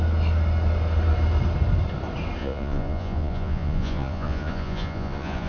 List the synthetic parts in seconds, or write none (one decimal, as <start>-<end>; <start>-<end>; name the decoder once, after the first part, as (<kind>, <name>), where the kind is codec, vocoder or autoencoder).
2.4-5.5 (vocoder, Vocos)